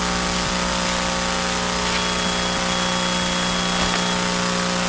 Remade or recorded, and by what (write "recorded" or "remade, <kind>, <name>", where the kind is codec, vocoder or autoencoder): recorded